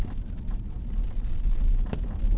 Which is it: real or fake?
real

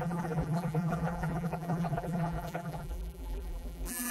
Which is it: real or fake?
fake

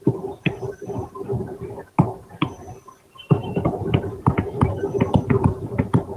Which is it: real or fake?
fake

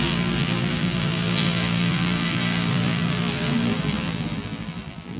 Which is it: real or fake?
fake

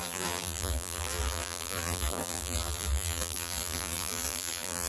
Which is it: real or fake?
fake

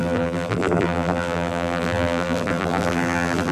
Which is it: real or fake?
fake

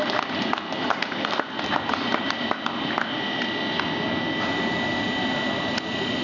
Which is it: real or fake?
real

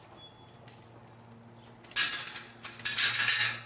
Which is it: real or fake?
real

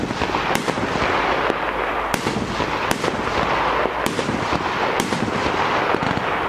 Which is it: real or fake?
real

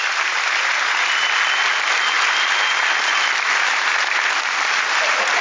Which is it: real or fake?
real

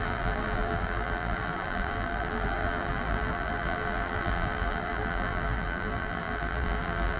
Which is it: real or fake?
fake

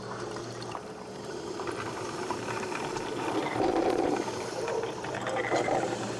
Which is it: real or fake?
fake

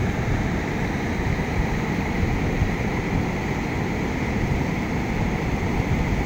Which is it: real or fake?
real